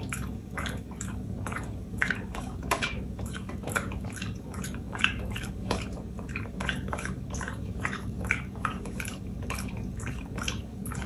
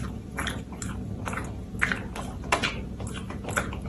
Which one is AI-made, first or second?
first